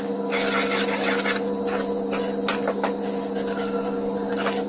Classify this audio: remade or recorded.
recorded